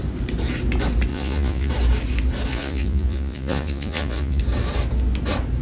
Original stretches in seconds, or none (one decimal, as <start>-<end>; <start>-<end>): 0.0-1.1; 1.7-2.5; 4.4-5.6